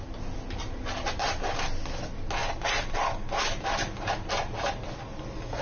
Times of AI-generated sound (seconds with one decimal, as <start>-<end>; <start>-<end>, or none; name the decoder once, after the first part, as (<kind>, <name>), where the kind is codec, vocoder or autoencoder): none